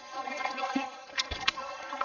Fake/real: fake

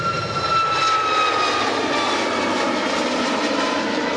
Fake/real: real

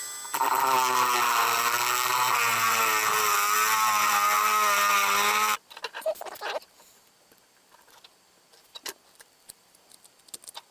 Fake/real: real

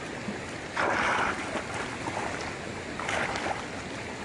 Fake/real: real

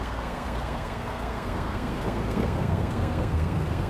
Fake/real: fake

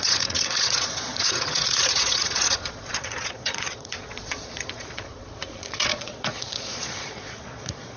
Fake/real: fake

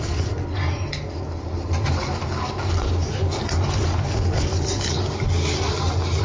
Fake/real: real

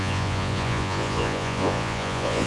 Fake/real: fake